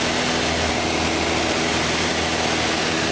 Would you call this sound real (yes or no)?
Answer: yes